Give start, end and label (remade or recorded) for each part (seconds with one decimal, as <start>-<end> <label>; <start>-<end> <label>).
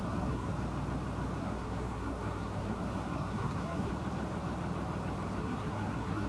0.0-0.5 remade; 0.5-1.4 recorded; 1.4-3.9 remade; 3.9-5.4 recorded; 5.4-6.3 remade